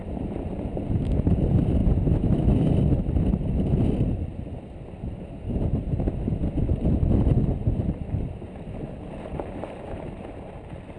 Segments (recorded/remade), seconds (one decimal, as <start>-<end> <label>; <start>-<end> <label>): 0.0-11.0 recorded